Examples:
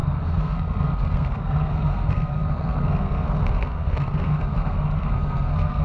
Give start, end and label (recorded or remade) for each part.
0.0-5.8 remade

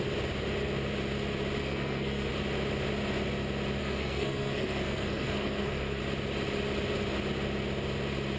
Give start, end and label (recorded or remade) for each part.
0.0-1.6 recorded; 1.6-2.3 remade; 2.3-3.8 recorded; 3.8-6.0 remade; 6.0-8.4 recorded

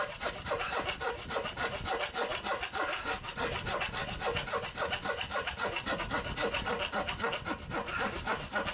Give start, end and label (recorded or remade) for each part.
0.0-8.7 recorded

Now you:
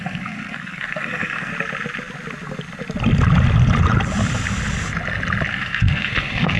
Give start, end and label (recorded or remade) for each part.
0.0-1.5 remade; 1.5-5.5 recorded; 5.5-6.6 remade

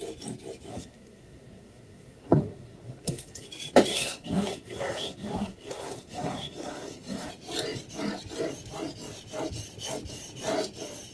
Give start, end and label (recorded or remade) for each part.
0.0-0.7 recorded; 0.7-3.5 remade; 3.5-3.9 recorded; 3.9-7.3 remade; 7.3-11.1 recorded

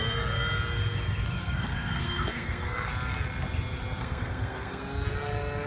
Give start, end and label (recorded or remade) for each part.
0.0-1.4 recorded; 1.4-2.9 remade; 2.9-4.0 recorded; 4.0-4.8 remade; 4.8-5.7 recorded